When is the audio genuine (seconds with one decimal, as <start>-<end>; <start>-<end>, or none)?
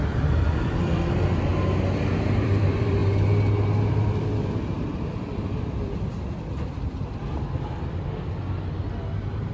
1.5-2.1; 3.0-3.9